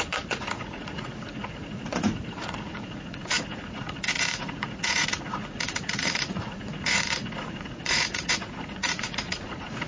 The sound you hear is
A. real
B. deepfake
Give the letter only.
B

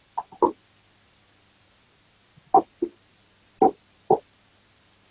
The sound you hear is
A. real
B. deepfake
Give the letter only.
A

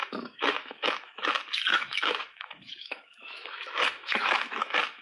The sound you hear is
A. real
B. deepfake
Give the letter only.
B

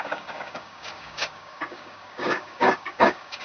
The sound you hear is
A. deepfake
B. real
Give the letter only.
A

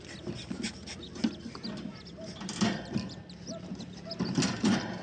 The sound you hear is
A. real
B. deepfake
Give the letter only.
A